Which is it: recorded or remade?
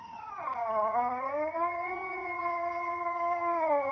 remade